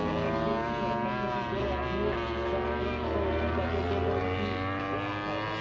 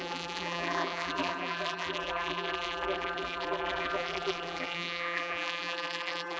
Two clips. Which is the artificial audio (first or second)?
second